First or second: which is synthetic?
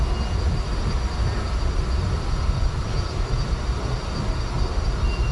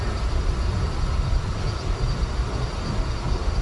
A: second